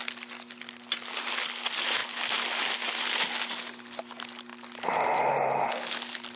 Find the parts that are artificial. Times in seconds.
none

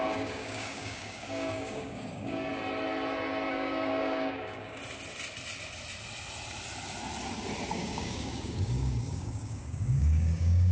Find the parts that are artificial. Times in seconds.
0.0-2.5 (codec, DAC); 3.5-4.8; 7.7-10.7